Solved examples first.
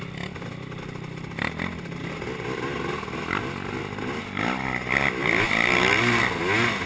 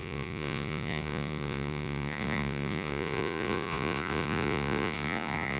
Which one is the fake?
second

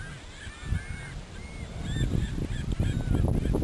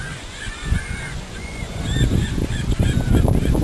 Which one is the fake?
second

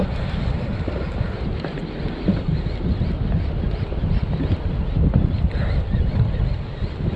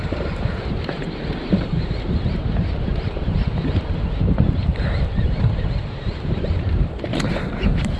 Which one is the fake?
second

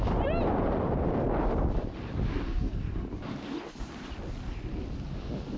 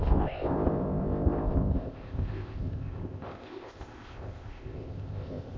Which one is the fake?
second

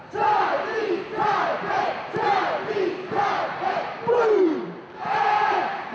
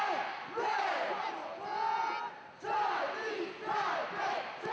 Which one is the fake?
first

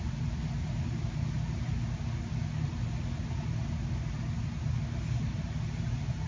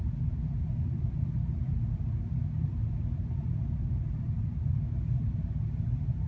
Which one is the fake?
second